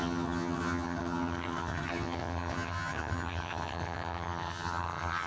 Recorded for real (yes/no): no